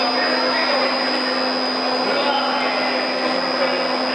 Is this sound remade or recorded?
recorded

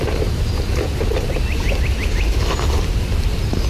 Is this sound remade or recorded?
recorded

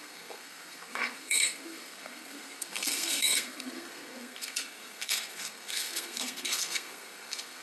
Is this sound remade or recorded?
remade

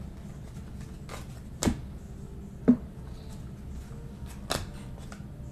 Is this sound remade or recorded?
recorded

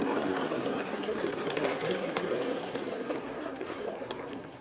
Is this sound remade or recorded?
remade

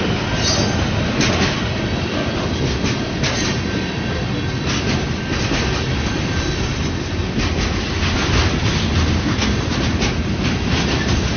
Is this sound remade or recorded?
recorded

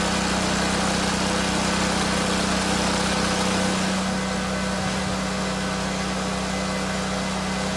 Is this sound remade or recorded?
recorded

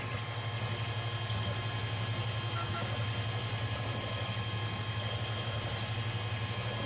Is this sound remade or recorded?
recorded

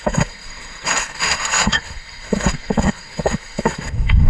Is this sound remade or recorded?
remade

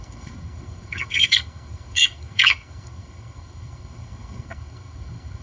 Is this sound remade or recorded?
remade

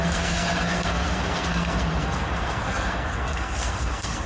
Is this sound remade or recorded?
remade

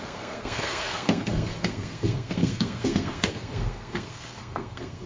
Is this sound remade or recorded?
remade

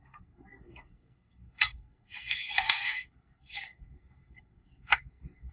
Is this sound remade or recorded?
remade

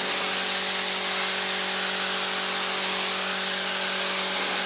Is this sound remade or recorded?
recorded